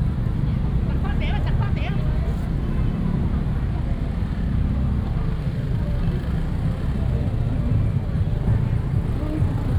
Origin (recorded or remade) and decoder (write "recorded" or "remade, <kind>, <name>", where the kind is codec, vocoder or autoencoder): recorded